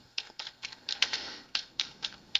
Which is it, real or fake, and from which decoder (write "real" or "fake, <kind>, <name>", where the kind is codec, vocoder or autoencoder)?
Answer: fake, codec, SNAC